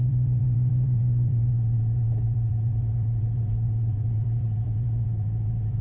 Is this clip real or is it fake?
fake